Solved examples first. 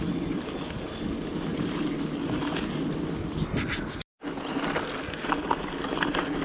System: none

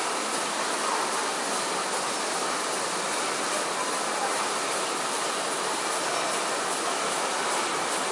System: none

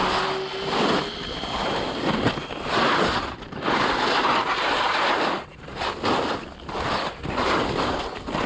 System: none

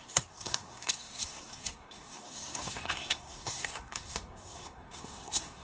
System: codec, SNAC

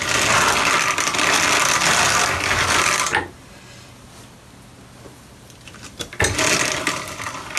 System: none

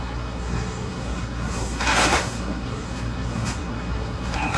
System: codec, SNAC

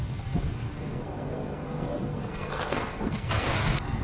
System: codec, SNAC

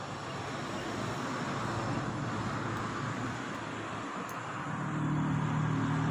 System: none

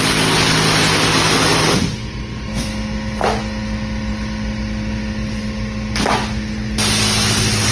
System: none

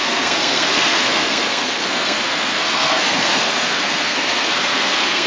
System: codec, SNAC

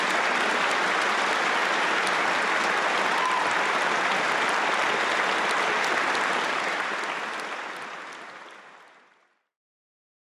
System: none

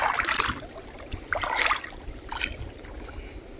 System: none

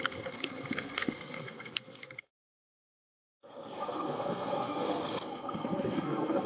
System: codec, SNAC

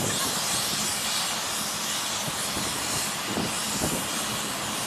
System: none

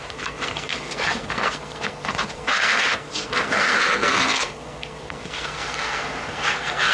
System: codec, SNAC